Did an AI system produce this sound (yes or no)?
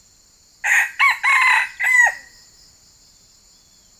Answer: no